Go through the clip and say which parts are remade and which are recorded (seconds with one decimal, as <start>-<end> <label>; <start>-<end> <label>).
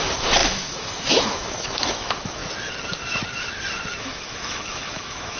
0.0-2.4 remade; 2.4-4.0 recorded; 4.0-5.4 remade